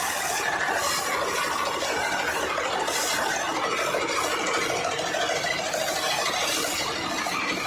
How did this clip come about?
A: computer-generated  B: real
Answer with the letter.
B